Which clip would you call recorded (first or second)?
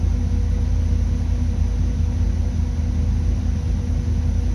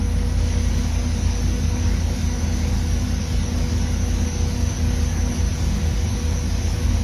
first